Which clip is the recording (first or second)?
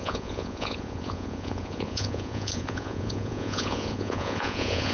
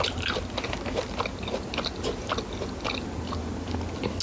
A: second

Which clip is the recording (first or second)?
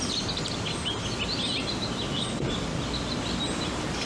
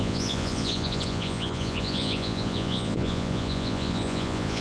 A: first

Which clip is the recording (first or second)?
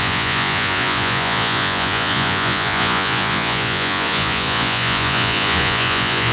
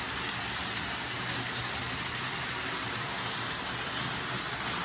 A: second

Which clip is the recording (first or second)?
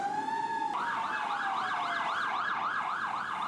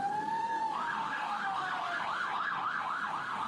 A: first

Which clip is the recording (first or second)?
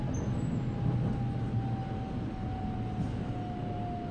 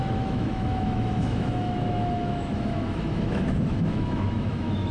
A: first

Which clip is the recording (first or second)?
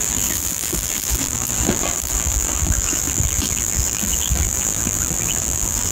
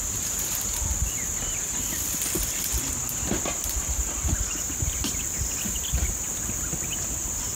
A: second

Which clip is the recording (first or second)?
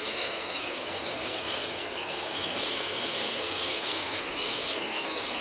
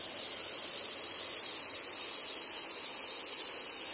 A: second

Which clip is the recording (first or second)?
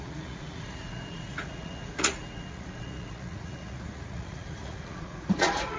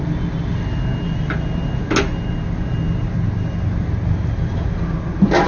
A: second